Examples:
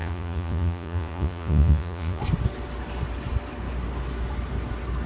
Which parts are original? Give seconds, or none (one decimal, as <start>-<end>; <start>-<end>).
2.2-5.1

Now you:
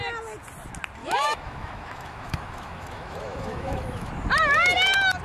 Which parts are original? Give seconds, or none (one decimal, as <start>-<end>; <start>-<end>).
0.0-1.0; 4.1-5.2

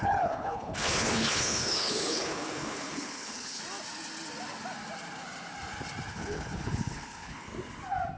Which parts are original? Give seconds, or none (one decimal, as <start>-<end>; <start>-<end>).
3.6-6.1; 7.5-8.2

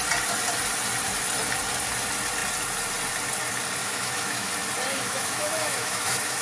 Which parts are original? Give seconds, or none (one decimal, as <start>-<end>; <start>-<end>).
0.0-3.8; 4.5-4.9